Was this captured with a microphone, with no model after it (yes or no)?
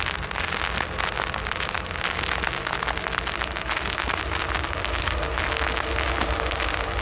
yes